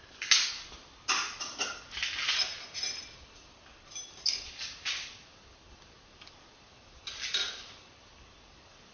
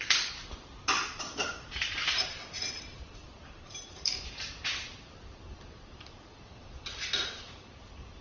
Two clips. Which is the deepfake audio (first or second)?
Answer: second